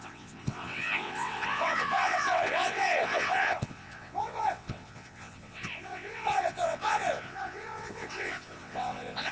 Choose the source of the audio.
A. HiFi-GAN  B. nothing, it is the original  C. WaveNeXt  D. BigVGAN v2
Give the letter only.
C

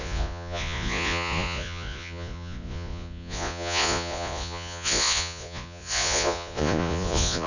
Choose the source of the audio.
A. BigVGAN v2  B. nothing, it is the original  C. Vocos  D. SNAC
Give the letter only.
C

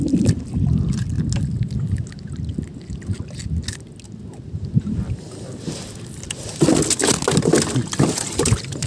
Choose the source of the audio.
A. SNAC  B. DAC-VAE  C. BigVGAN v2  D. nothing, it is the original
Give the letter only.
D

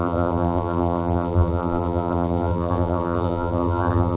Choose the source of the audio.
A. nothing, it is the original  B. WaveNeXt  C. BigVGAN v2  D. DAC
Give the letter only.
C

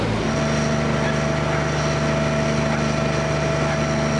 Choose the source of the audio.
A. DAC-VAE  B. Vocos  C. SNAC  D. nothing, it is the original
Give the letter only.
D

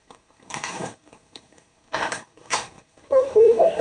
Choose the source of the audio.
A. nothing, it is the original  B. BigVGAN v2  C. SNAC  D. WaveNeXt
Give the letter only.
C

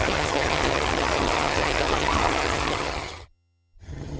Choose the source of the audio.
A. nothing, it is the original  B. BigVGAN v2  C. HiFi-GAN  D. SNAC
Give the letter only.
C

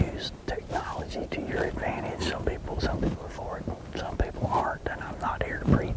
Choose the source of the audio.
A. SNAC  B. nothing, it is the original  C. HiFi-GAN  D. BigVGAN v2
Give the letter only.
D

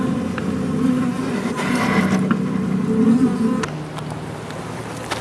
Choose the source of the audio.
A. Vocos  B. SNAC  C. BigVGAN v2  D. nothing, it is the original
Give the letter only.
D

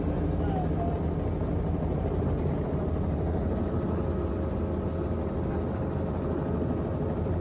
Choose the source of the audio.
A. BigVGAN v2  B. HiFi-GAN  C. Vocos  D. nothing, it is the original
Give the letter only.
D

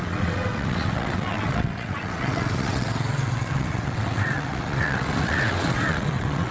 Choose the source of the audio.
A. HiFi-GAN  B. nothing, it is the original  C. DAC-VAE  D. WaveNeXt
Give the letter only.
D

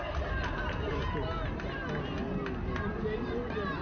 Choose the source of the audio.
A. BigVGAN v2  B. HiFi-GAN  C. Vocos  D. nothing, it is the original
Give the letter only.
D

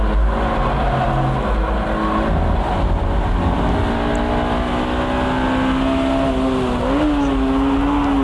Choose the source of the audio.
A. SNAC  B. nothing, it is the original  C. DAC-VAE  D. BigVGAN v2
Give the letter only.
B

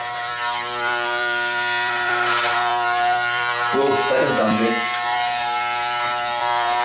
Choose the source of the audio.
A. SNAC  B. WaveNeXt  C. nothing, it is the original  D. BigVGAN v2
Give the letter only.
D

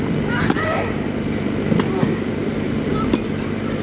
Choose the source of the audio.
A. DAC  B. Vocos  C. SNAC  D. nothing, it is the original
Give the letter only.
D